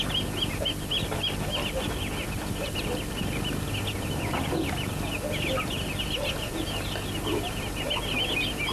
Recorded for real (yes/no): yes